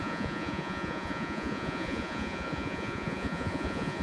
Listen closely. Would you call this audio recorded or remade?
remade